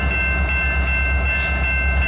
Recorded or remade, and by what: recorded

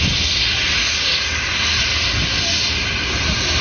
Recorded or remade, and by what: recorded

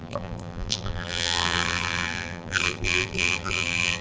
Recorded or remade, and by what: remade, vocoder, BigVGAN v2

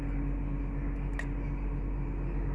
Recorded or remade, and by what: recorded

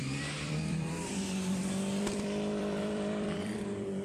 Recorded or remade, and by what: remade, vocoder, BigVGAN v2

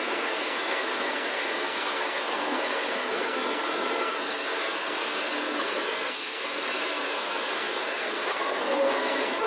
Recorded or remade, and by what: remade, codec, SNAC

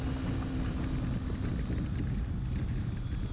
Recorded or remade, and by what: recorded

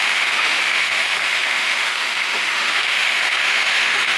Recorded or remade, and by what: remade, autoencoder, DAC-VAE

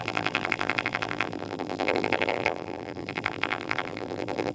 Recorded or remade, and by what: remade, vocoder, BigVGAN v2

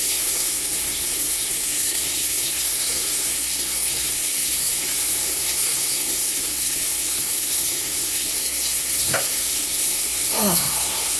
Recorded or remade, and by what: remade, codec, SNAC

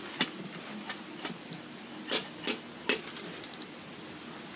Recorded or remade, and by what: recorded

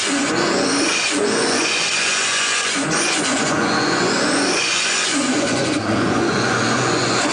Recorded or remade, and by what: remade, vocoder, Vocos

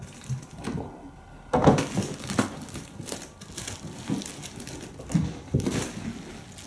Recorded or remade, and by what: recorded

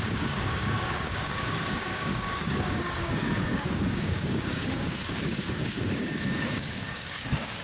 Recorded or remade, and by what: remade, codec, DAC